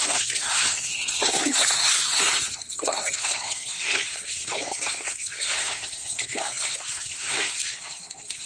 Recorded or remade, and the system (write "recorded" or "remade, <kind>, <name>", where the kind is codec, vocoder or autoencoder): remade, codec, SNAC